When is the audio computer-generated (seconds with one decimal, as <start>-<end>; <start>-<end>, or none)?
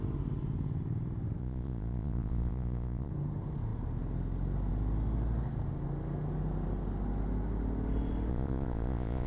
1.4-3.1; 8.3-9.3